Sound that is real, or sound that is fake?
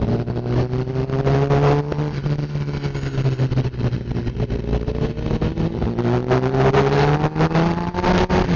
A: real